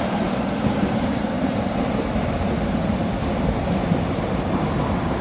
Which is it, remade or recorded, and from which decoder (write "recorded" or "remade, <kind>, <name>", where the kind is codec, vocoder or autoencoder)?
recorded